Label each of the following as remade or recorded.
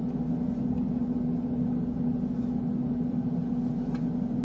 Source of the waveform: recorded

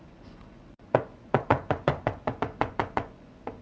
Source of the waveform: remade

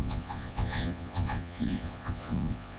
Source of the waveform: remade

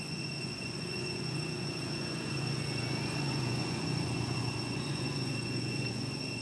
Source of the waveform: remade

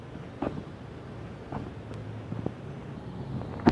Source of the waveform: recorded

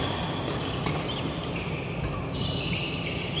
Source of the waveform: recorded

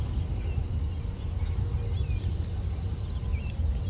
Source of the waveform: recorded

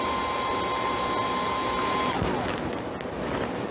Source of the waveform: recorded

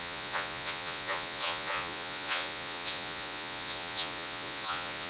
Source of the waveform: remade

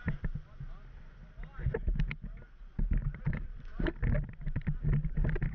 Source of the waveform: recorded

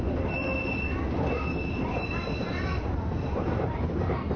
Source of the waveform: recorded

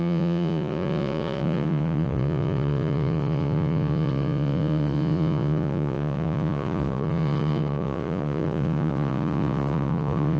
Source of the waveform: remade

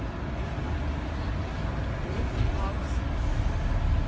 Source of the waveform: recorded